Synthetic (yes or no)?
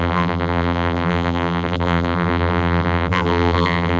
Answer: yes